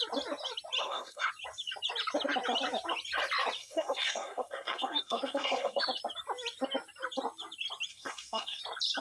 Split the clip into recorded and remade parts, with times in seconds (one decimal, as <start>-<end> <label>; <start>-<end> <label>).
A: 0.0-0.8 recorded; 0.8-1.3 remade; 1.3-3.6 recorded; 3.6-5.8 remade; 5.8-7.9 recorded; 7.9-8.6 remade; 8.6-9.0 recorded

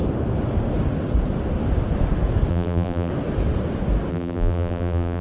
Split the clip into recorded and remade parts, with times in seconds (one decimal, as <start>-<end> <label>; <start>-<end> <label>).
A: 0.0-2.5 recorded; 2.5-3.1 remade; 3.1-4.1 recorded; 4.1-5.2 remade

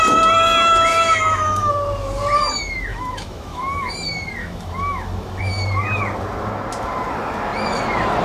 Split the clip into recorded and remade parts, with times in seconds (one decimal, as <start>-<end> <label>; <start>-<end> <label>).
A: 0.0-0.9 recorded; 0.9-1.7 remade; 1.7-2.9 recorded; 2.9-3.9 remade; 3.9-4.4 recorded; 4.4-5.4 remade; 5.4-8.2 recorded

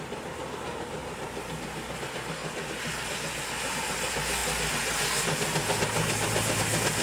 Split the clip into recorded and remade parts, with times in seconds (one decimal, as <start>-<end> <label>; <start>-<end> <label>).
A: 0.0-1.0 recorded; 1.0-1.9 remade; 1.9-7.0 recorded

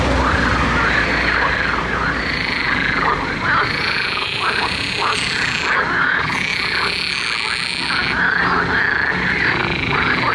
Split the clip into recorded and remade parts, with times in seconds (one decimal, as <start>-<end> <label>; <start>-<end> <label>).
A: 0.0-10.3 recorded

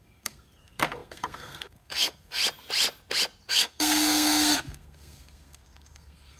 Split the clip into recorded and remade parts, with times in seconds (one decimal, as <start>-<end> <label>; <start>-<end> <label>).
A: 0.0-2.4 remade; 2.4-3.5 recorded; 3.5-6.4 remade

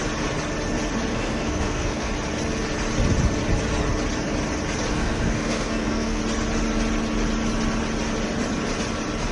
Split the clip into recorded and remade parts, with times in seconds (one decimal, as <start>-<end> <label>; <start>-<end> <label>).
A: 0.0-1.1 recorded; 1.1-2.1 remade; 2.1-4.9 recorded; 4.9-6.2 remade; 6.2-9.3 recorded